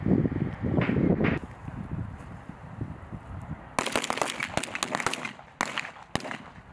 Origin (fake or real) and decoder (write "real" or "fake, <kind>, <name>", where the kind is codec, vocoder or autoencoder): real